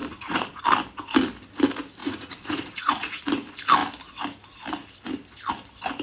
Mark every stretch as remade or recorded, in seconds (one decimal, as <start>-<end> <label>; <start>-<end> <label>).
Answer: 0.0-0.6 remade; 0.6-2.0 recorded; 2.0-3.3 remade; 3.3-6.0 recorded